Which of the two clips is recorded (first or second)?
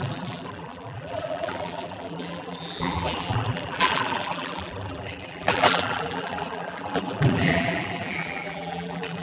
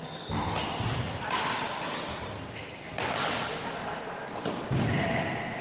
second